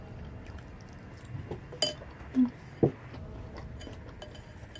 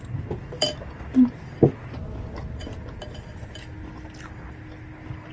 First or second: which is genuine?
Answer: first